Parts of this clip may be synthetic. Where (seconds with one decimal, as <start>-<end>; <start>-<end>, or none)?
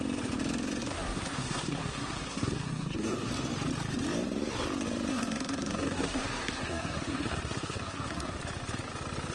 0.8-3.3; 5.1-8.4